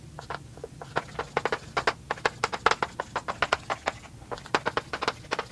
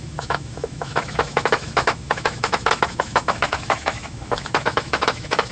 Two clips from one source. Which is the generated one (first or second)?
second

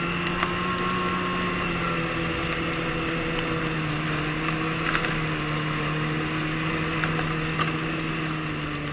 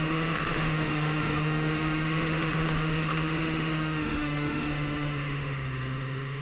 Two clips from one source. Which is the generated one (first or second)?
second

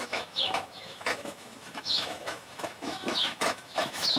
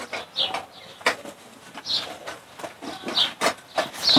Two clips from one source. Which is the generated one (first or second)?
first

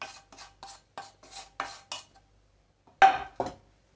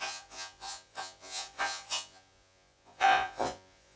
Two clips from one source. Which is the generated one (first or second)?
second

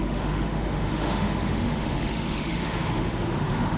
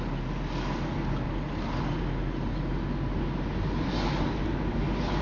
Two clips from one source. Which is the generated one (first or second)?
first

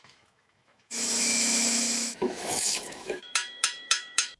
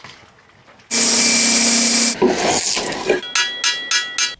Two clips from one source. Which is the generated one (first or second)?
first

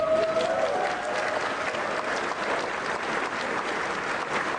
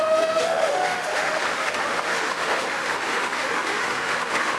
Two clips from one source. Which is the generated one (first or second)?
second